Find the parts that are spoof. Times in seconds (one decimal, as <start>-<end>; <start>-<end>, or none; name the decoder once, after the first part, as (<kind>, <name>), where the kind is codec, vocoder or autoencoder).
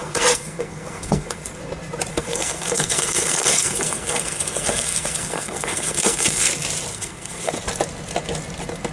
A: 0.0-1.6 (codec, SNAC); 2.1-6.5; 6.9-7.5